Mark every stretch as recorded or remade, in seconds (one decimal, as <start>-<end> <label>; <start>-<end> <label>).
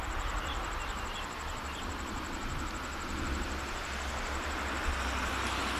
0.0-5.8 recorded